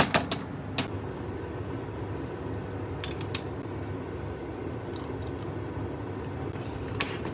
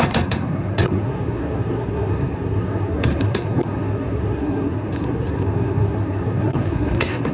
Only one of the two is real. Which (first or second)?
first